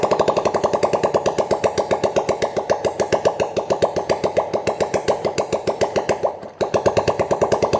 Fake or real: fake